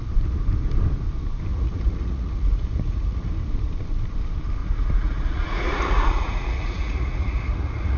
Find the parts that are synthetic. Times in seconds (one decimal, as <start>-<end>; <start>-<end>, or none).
1.5-3.3; 4.6-8.0